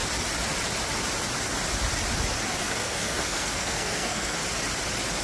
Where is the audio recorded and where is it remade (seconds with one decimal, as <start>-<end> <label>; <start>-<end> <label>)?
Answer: 0.0-2.6 recorded; 2.6-4.4 remade; 4.4-5.2 recorded

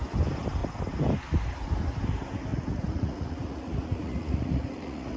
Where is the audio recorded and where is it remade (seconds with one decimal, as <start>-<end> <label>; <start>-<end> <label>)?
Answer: 0.0-2.5 recorded; 2.5-5.2 remade

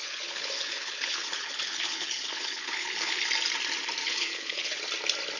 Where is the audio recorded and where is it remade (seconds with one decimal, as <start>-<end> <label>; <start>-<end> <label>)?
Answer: 0.0-3.2 remade; 3.2-4.0 recorded; 4.0-4.8 remade; 4.8-5.4 recorded

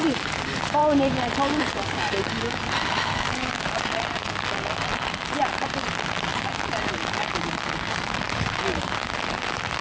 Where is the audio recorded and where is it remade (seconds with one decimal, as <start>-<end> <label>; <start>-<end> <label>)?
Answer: 0.0-2.8 recorded; 2.8-3.5 remade; 3.5-9.8 recorded

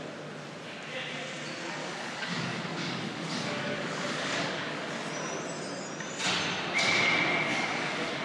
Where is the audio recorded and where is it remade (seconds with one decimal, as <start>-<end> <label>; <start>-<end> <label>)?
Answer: 0.0-1.8 recorded; 1.8-4.9 remade; 4.9-7.5 recorded; 7.5-8.2 remade

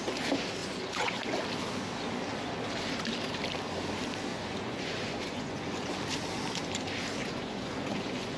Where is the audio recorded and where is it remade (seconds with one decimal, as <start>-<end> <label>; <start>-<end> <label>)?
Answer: 0.0-0.6 recorded; 0.6-1.4 remade; 1.4-4.3 recorded; 4.3-5.9 remade; 5.9-7.2 recorded; 7.2-8.4 remade